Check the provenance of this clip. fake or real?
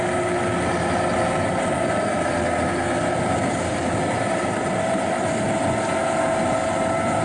real